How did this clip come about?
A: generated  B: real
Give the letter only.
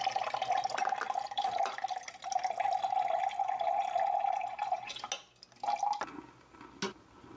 B